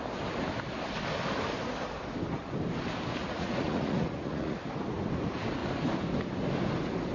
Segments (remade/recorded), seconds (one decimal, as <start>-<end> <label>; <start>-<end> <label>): 0.0-3.2 recorded; 3.2-4.6 remade; 4.6-7.1 recorded